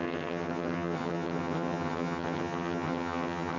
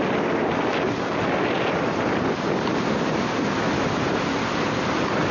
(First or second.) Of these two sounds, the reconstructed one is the first